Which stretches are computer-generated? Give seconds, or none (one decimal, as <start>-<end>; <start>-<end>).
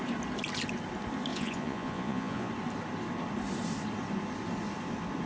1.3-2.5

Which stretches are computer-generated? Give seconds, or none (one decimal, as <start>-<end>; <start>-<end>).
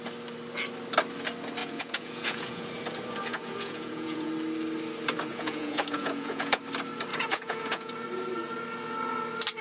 1.6-2.7; 3.3-4.3; 5.3-6.6; 7.1-7.9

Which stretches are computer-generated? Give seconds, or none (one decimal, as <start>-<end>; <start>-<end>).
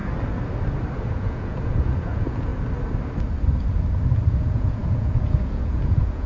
1.1-2.5; 4.3-6.3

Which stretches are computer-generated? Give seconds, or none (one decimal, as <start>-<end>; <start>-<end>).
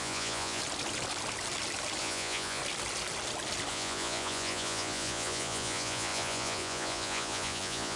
0.0-0.6; 2.0-2.6; 3.7-8.0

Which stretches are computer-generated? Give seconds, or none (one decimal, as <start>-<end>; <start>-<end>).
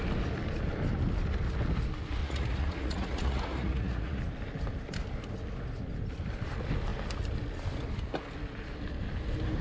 2.2-4.2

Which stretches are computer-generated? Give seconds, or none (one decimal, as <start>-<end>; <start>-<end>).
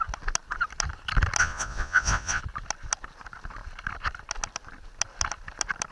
1.4-2.4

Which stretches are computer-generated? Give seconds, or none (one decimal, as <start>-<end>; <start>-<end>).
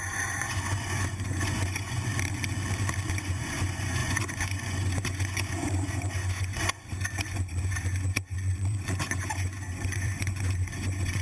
0.0-2.1; 3.1-11.2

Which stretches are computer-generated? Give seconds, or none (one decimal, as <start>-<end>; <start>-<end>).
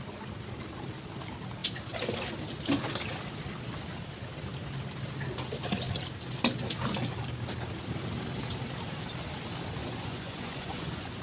9.8-11.2